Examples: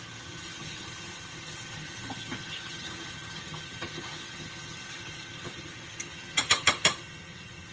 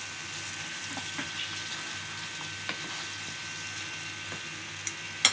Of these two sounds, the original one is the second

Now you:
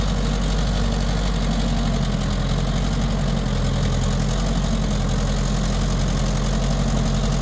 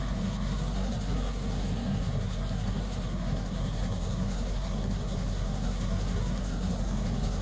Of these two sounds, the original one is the first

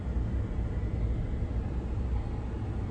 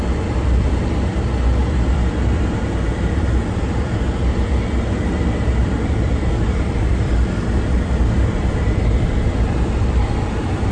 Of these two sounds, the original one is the first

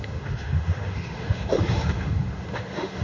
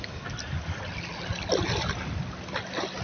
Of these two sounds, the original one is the second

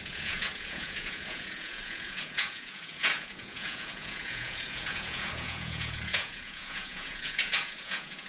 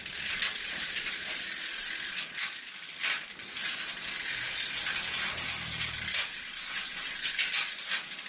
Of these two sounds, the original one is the second